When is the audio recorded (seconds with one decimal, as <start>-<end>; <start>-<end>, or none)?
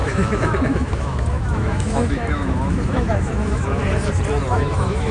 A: 3.8-4.5